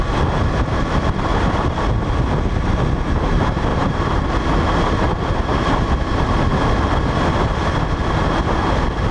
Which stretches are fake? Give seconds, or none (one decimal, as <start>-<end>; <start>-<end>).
1.3-1.9; 3.7-4.3